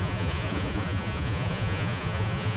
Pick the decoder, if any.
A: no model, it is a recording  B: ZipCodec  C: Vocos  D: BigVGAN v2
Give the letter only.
C